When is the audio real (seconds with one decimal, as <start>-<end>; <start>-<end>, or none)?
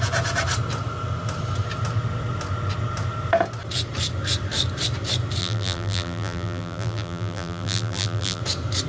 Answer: 0.0-5.4; 8.4-8.9